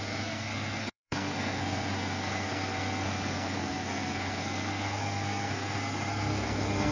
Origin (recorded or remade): remade